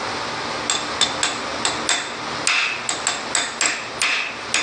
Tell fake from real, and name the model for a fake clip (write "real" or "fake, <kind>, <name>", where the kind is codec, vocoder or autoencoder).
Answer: real